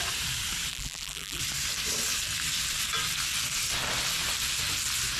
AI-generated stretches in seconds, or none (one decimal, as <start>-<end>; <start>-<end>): 0.7-1.4